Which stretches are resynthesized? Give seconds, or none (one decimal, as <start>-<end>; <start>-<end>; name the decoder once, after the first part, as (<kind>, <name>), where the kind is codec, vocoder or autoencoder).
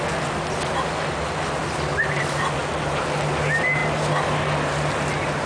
1.6-2.6 (vocoder, BigVGAN v2)